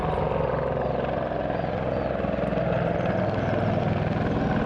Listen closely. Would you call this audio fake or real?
real